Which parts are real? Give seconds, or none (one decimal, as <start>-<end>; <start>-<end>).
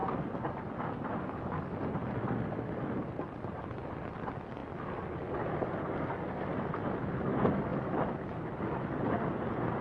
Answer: 0.0-9.8